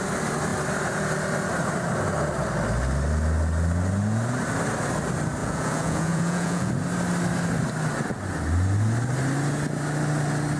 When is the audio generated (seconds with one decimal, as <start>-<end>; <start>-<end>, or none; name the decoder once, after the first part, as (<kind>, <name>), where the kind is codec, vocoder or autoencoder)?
5.4-6.7 (vocoder, Vocos)